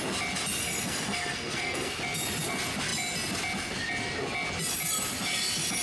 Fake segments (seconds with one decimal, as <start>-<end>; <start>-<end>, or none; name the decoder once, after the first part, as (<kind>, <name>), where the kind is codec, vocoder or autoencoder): 0.6-1.9 (codec, SNAC)